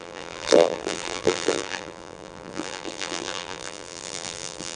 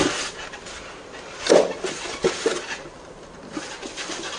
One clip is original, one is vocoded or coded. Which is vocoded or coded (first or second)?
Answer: first